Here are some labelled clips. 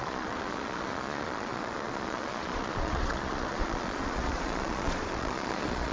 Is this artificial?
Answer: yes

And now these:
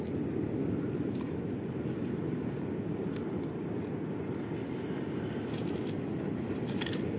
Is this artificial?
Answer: no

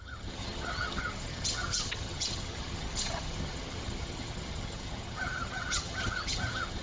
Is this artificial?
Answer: yes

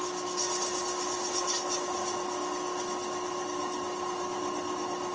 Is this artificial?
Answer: no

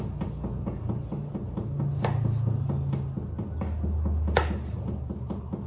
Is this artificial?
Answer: no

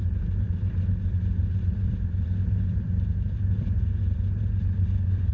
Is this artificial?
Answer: yes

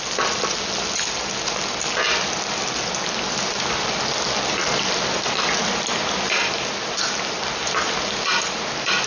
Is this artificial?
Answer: no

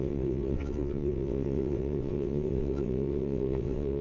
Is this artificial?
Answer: yes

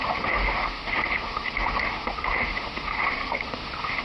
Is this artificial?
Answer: yes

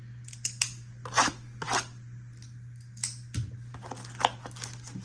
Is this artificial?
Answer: no